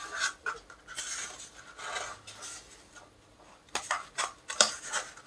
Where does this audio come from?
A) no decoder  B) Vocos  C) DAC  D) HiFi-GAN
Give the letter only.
A